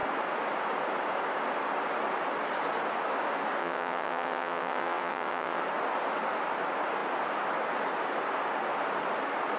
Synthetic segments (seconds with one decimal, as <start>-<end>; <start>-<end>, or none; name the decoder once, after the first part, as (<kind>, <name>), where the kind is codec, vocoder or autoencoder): 3.6-5.6 (vocoder, WaveNeXt)